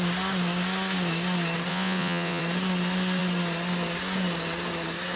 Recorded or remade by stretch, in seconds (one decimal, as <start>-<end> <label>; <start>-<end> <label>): 0.0-1.7 recorded; 1.7-2.4 remade; 2.4-5.2 recorded